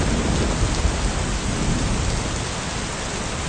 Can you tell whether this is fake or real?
real